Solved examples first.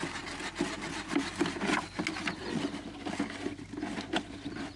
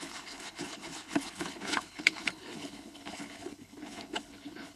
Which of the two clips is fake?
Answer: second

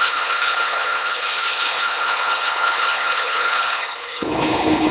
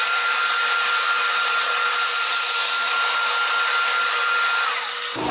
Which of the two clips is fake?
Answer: first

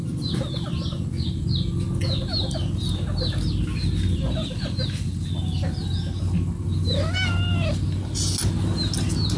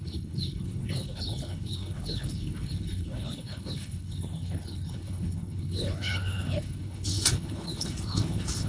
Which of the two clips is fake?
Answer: second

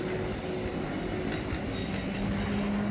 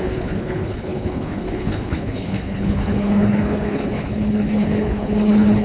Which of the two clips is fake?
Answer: second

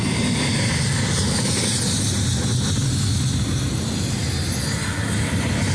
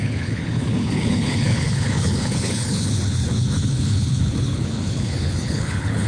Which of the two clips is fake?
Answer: second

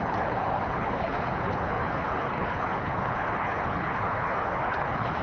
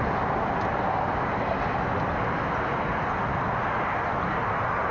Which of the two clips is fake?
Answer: first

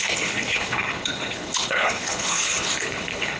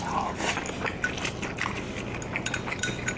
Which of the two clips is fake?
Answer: first